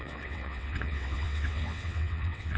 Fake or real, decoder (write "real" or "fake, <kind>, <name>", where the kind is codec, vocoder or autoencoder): fake, vocoder, WaveNeXt